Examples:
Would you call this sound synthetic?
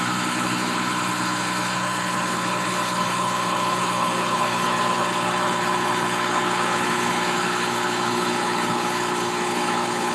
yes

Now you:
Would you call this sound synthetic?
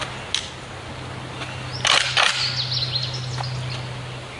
no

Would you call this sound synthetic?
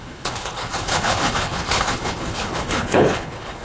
yes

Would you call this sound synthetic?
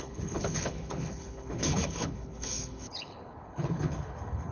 yes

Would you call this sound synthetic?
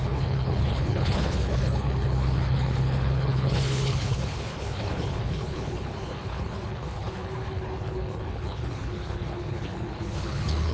yes